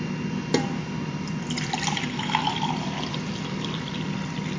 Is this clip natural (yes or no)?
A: yes